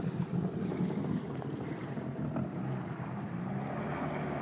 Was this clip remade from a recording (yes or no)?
no